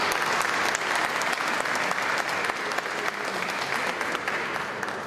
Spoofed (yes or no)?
no